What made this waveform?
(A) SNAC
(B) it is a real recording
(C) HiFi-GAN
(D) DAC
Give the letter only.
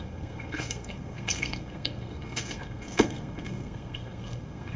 A